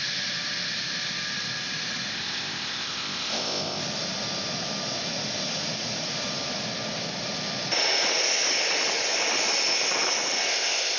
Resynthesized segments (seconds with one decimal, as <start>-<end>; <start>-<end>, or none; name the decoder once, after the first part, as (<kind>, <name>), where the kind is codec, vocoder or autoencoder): 2.1-3.8 (codec, ZipCodec); 10.5-11.0